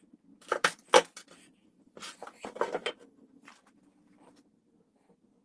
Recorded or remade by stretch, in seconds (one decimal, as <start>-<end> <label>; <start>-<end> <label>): 0.0-1.6 recorded; 1.6-4.8 remade; 4.8-5.4 recorded